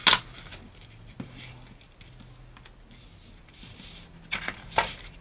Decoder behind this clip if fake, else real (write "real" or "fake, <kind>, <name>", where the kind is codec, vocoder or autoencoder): real